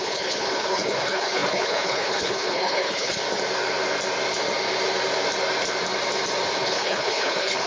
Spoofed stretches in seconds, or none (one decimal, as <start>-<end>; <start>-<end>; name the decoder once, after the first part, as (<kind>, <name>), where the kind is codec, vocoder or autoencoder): 0.0-3.2 (codec, HILCodec); 6.6-7.7